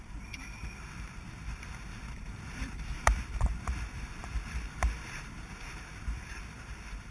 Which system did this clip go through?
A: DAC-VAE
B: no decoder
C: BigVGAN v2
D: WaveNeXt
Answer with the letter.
C